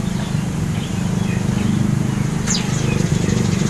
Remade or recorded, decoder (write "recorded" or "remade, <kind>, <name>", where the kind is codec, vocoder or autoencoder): recorded